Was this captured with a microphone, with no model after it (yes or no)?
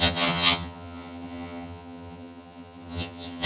no